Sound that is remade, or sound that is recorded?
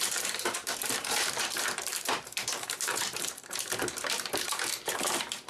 remade